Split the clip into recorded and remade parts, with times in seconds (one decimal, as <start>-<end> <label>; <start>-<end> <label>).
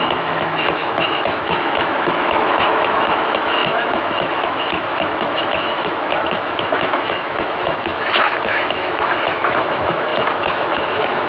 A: 0.0-11.3 remade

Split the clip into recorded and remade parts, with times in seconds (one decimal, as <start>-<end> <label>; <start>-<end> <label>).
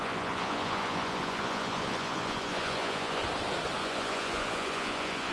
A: 0.0-3.2 remade; 3.2-3.8 recorded; 3.8-5.3 remade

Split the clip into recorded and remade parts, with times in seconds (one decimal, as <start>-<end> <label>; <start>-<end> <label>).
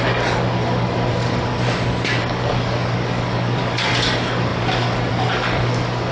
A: 0.0-1.6 remade; 1.6-2.2 recorded; 2.2-6.1 remade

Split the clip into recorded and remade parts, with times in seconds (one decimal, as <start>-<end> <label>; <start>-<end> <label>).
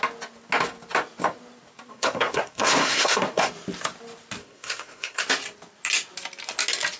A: 0.0-1.9 recorded; 1.9-3.5 remade; 3.5-4.4 recorded; 4.4-5.2 remade; 5.2-7.0 recorded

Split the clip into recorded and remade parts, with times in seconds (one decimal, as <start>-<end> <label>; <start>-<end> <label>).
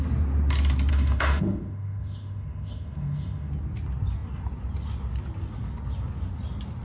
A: 0.0-0.9 recorded; 0.9-3.5 remade; 3.5-6.8 recorded